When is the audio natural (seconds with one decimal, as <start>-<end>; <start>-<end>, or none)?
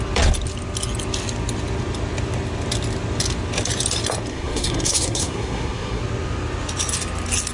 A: 0.0-4.3; 6.0-7.5